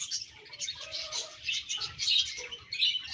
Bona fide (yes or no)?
yes